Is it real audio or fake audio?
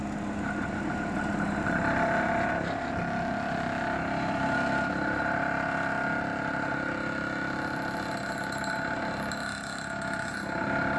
real